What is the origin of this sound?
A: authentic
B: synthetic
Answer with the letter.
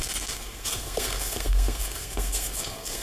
B